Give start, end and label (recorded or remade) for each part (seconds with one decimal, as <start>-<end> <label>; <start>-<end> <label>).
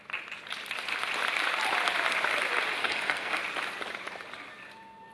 0.0-2.8 recorded; 2.8-3.4 remade; 3.4-5.1 recorded